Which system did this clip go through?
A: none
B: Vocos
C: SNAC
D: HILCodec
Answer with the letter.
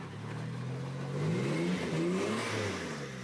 A